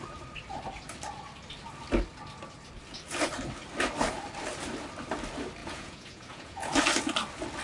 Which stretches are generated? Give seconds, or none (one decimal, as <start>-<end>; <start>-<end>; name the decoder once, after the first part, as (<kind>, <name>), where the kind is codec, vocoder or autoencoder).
5.6-6.7 (vocoder, Vocos)

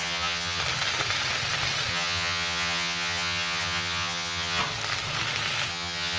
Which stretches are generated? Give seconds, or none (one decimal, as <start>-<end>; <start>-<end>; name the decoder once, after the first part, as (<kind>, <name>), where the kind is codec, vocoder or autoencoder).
0.0-0.6 (vocoder, HiFi-GAN); 1.9-4.6; 5.7-6.2

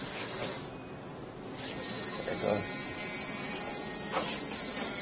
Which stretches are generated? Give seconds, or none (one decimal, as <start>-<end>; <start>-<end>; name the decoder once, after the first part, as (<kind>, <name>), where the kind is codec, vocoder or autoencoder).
none

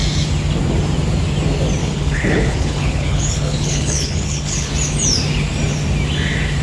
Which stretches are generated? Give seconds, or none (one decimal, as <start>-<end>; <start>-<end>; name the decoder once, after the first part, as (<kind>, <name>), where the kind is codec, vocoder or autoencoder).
1.8-4.7 (codec, HILCodec)

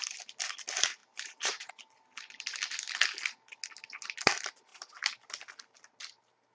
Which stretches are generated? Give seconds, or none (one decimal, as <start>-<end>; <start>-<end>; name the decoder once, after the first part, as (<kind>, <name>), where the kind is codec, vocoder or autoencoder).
1.0-1.7 (vocoder, BigVGAN v2)